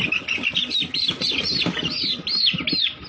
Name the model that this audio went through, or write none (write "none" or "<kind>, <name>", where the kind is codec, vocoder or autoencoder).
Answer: none